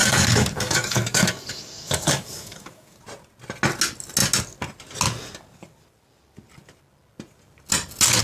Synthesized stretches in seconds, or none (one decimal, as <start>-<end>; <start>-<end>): 0.0-3.0